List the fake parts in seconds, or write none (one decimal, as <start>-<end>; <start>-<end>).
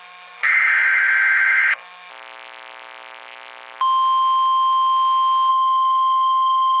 0.0-2.1; 5.5-6.8